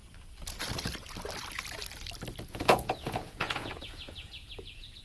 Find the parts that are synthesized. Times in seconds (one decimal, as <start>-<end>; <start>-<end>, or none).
2.5-5.0